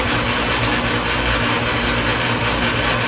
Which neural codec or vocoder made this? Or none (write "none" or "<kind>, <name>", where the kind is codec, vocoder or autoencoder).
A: none